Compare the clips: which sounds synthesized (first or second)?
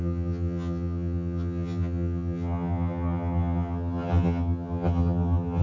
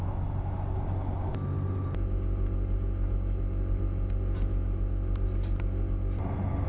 first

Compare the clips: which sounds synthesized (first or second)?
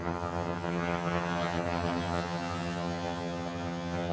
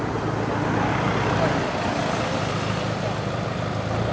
first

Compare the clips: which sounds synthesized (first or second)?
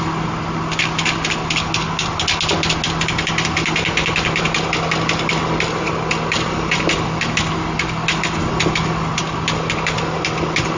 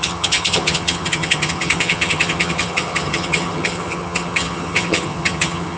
second